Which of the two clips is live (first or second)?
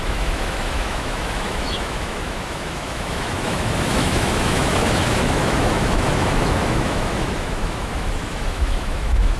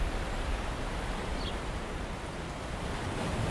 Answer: second